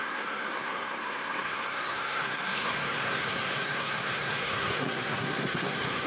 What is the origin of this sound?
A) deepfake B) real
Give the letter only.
A